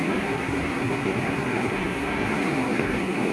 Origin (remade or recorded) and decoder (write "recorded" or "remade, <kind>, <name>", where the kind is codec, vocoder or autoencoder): remade, codec, SNAC